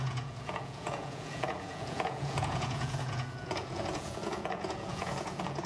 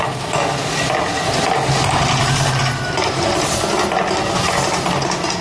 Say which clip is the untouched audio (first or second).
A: second